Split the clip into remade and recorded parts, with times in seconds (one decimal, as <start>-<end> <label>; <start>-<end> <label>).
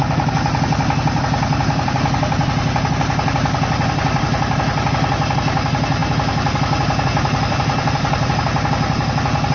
0.0-1.5 recorded; 1.5-2.9 remade; 2.9-6.0 recorded; 6.0-8.3 remade; 8.3-9.5 recorded